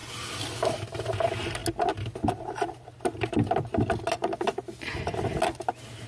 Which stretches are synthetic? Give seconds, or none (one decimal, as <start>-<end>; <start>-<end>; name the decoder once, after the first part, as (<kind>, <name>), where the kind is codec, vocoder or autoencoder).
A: 0.0-1.2 (vocoder, BigVGAN v2)